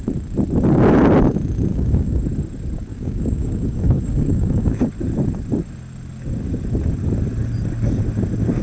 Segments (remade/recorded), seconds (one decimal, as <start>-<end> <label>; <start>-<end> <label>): 0.0-1.7 recorded; 1.7-2.2 remade; 2.2-2.9 recorded; 2.9-4.8 remade; 4.8-8.6 recorded